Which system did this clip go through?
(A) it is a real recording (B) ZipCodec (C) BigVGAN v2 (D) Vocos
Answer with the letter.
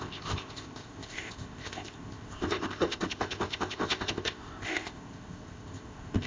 B